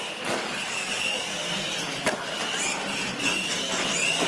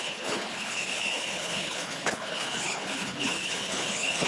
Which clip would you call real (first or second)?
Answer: first